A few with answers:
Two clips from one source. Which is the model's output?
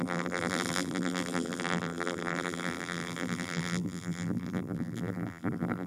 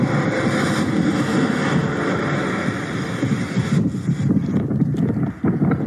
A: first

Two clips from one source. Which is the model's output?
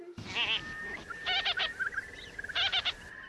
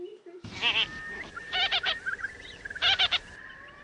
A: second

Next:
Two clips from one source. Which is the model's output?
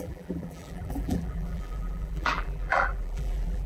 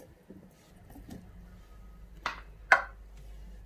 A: first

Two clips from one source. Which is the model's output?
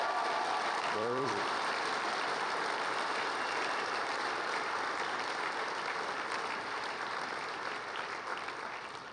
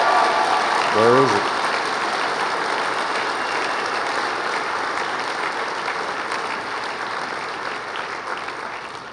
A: first